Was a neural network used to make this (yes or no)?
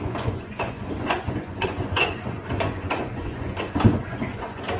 yes